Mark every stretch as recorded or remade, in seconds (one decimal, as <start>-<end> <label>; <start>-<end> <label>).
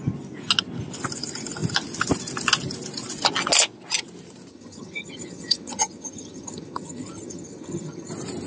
0.0-4.5 recorded; 4.5-8.1 remade; 8.1-8.5 recorded